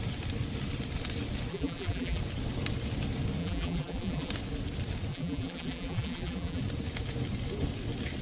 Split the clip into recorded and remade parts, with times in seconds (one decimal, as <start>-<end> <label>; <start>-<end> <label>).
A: 0.0-1.5 recorded; 1.5-2.2 remade; 2.2-3.4 recorded; 3.4-4.3 remade; 4.3-5.1 recorded; 5.1-6.6 remade; 6.6-8.2 recorded